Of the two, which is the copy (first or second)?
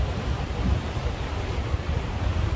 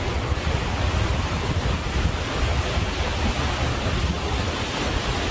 first